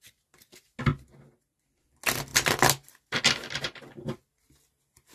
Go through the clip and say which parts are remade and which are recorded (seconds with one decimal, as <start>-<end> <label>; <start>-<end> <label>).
0.0-5.1 recorded